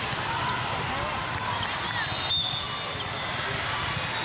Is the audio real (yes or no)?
yes